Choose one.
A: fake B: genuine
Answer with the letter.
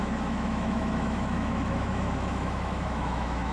A